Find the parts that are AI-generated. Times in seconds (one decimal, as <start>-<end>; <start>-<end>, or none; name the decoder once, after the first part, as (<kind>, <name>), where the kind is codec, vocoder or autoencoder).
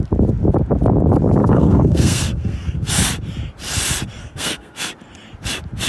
1.4-2.9 (codec, SNAC); 4.2-4.9